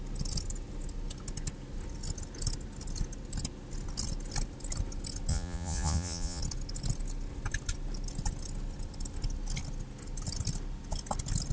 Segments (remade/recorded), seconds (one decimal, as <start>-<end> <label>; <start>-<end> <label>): 0.0-5.3 recorded; 5.3-6.4 remade; 6.4-11.5 recorded